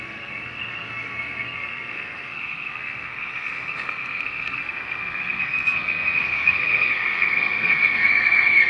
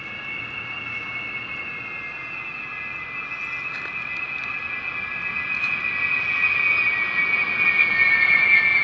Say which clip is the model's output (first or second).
first